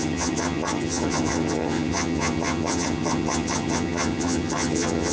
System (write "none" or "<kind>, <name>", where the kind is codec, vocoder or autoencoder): vocoder, HiFi-GAN